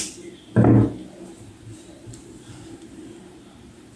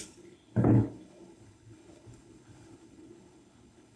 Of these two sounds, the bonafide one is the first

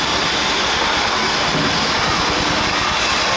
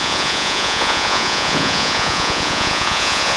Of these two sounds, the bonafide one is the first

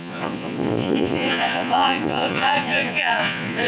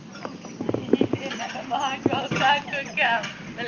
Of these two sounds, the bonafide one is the second